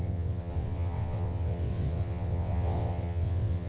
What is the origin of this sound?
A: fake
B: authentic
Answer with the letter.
A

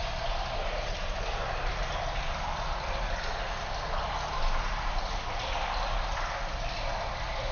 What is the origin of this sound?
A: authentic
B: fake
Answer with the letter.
A